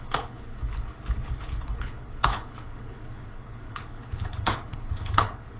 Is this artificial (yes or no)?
yes